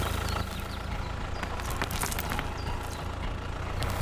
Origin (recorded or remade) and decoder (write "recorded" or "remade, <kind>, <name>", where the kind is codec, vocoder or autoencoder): recorded